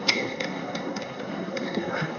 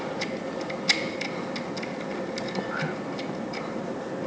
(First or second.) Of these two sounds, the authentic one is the second